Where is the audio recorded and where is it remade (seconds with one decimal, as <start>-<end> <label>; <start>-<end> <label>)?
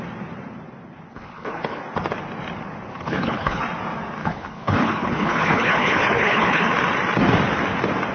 0.0-1.1 recorded; 1.1-1.8 remade; 1.8-2.9 recorded; 2.9-3.6 remade; 3.6-4.2 recorded; 4.2-6.7 remade; 6.7-8.1 recorded